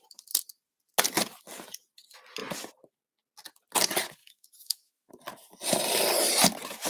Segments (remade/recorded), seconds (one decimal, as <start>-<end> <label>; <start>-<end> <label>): 0.0-4.2 recorded; 4.2-5.1 remade; 5.1-6.9 recorded